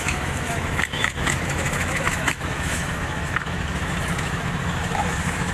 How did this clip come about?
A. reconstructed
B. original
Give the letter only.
A